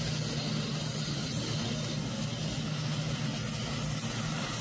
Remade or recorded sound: recorded